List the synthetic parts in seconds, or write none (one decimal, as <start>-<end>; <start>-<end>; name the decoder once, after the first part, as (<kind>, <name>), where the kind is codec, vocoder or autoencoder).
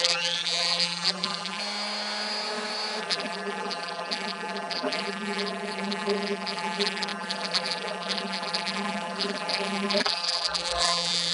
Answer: 0.0-1.6 (vocoder, BigVGAN v2); 3.0-11.3